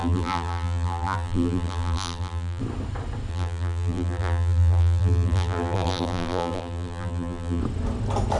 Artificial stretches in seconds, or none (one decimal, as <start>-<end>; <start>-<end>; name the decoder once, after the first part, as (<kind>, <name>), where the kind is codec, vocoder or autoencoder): 0.0-2.6 (vocoder, BigVGAN v2); 3.3-7.6

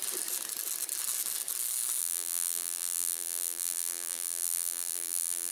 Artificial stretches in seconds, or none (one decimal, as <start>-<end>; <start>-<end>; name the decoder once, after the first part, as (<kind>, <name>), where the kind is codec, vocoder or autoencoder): 2.0-5.5 (vocoder, BigVGAN v2)

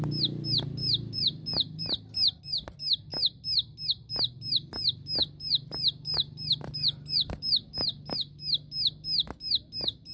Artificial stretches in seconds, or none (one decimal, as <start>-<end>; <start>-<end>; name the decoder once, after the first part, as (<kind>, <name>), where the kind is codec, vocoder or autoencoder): 0.8-2.4 (vocoder, BigVGAN v2); 5.2-7.5